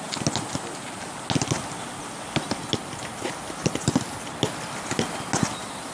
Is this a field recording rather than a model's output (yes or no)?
yes